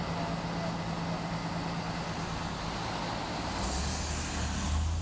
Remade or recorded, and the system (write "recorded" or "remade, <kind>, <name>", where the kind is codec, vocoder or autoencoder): recorded